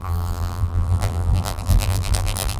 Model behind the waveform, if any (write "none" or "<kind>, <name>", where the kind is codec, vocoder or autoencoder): vocoder, BigVGAN v2